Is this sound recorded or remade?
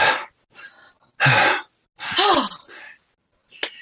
recorded